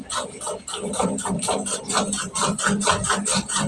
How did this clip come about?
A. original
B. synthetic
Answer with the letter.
A